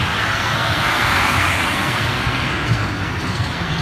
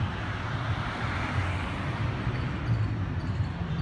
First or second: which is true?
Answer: second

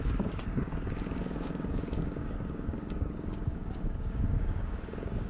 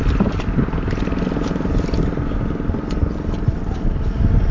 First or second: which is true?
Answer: second